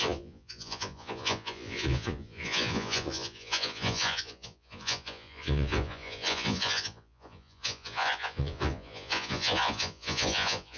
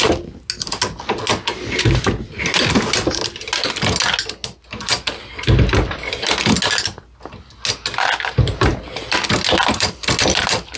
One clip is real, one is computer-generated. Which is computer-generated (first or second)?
first